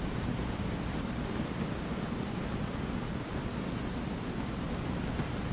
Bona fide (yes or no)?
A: yes